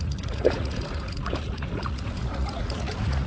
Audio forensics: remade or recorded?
remade